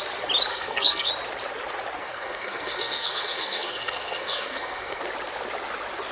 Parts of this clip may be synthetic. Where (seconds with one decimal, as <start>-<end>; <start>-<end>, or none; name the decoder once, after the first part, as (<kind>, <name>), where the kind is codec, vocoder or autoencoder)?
0.5-1.1 (codec, SNAC); 2.0-5.0